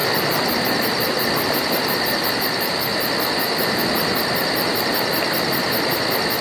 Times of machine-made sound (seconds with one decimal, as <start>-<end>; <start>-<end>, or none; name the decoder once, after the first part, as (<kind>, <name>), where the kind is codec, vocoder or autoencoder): none